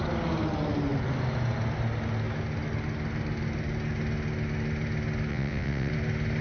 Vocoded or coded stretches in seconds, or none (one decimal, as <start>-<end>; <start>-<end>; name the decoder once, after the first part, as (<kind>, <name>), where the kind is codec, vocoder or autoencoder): 5.3-5.9 (vocoder, WaveNeXt)